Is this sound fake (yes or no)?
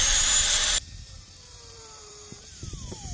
yes